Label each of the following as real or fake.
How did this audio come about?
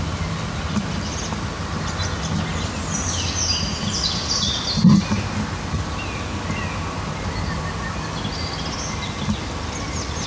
real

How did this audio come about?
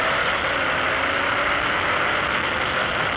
real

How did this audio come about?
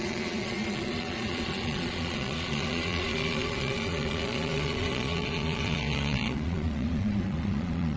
fake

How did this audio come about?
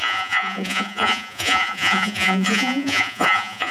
fake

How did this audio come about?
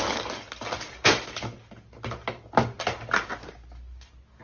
real